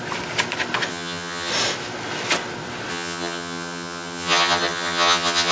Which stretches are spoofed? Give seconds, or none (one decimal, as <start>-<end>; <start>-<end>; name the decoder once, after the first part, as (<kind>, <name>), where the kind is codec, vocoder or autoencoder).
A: 0.9-1.5 (vocoder, HiFi-GAN); 2.9-5.5